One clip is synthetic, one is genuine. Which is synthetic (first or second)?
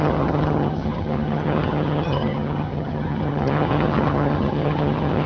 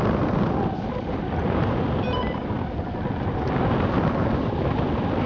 first